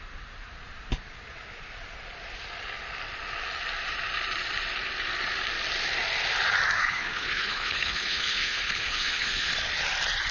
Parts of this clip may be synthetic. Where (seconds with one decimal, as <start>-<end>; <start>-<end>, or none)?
6.8-9.5